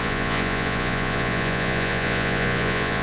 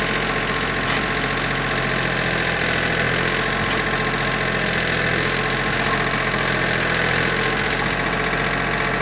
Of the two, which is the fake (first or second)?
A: first